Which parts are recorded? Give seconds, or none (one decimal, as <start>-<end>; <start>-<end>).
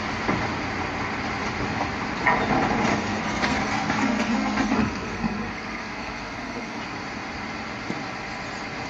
0.0-2.9; 6.8-8.9